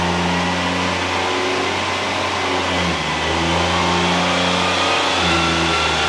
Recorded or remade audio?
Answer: recorded